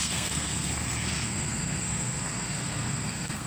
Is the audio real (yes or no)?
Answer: no